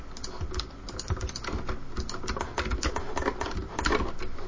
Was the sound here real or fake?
real